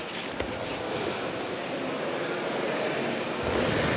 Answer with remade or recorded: recorded